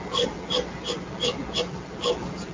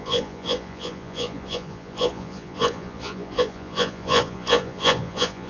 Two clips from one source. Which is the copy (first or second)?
second